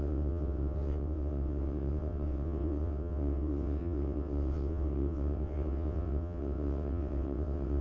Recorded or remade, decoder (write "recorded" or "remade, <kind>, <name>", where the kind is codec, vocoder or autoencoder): remade, vocoder, WaveNeXt